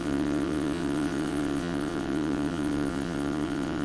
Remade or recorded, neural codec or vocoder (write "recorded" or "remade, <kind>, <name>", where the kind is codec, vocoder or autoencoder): remade, vocoder, WaveNeXt